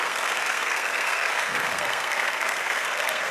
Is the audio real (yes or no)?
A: no